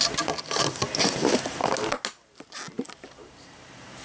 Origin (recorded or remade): recorded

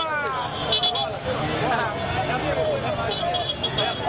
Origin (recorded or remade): recorded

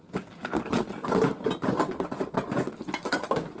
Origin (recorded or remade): recorded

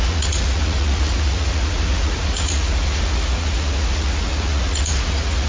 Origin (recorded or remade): remade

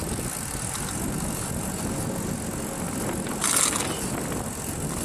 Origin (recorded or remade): recorded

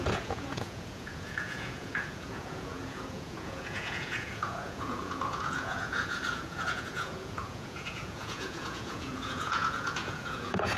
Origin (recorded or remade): remade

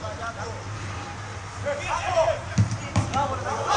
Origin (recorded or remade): recorded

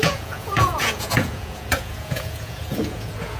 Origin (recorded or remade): remade